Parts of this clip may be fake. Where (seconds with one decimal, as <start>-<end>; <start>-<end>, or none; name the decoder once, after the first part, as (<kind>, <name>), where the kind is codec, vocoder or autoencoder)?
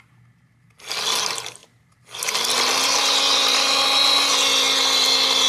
1.6-3.0 (vocoder, BigVGAN v2)